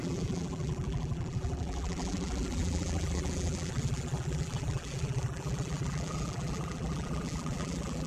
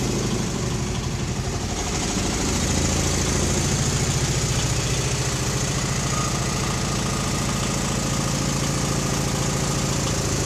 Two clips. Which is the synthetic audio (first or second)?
first